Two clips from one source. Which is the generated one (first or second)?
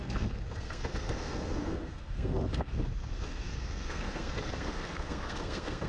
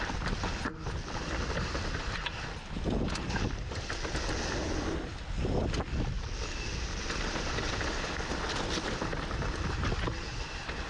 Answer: first